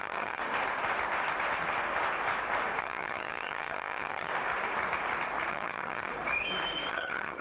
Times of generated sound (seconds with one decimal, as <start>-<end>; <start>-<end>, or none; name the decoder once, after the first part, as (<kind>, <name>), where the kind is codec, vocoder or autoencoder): 0.0-0.4 (vocoder, HiFi-GAN); 2.8-4.3; 5.5-6.1; 6.9-7.4